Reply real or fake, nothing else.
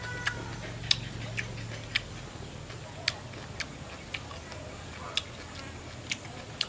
real